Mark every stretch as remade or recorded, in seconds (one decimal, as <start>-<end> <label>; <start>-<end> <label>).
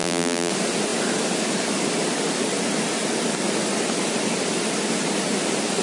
0.0-0.5 remade; 0.5-5.8 recorded